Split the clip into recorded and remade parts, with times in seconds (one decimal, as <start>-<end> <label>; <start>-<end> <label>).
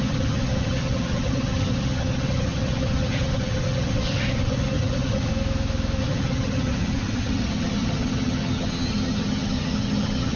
0.0-5.3 remade; 5.3-6.0 recorded; 6.0-10.4 remade